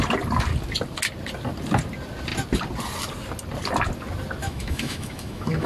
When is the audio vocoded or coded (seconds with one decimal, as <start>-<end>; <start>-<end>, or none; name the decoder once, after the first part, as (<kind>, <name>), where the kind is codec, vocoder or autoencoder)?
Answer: 4.4-5.7 (autoencoder, DAC-VAE)